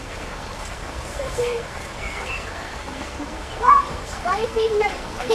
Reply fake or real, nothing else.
fake